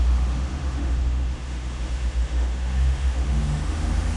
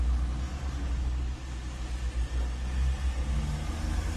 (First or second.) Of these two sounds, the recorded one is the second